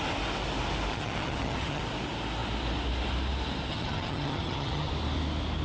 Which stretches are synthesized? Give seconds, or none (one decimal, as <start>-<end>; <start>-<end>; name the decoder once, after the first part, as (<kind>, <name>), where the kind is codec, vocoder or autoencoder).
0.9-1.8 (vocoder, HiFi-GAN); 3.7-4.9